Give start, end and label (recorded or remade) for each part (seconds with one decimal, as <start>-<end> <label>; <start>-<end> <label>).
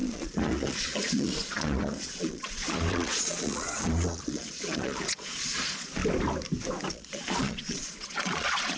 0.0-6.0 remade; 6.0-6.9 recorded; 6.9-8.8 remade